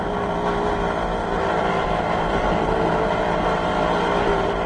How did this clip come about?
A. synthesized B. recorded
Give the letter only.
B